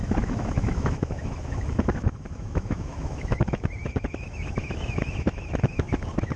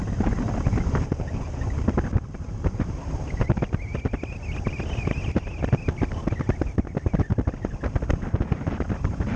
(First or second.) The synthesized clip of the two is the first